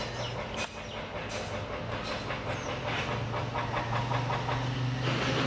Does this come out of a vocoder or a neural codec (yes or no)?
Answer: no